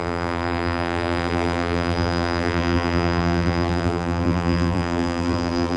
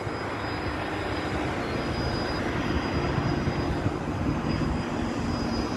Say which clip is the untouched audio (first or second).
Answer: second